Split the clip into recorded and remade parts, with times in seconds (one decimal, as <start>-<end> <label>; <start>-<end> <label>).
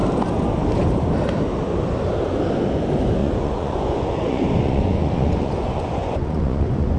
0.0-3.2 recorded; 3.2-7.0 remade